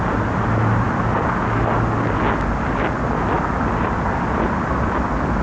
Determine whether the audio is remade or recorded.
recorded